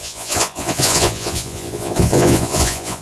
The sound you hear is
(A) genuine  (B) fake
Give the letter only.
B